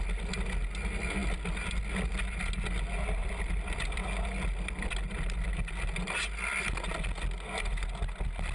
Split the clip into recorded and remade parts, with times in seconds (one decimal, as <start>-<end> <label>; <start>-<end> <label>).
0.0-1.2 recorded; 1.2-1.8 remade; 1.8-3.2 recorded; 3.2-3.8 remade; 3.8-8.5 recorded